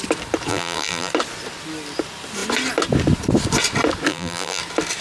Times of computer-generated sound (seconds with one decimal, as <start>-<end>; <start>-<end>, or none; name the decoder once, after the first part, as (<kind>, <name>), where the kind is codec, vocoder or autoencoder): 0.5-1.1 (vocoder, BigVGAN v2); 4.1-4.6